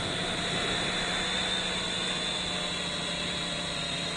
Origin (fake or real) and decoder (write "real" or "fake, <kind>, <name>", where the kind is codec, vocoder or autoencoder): real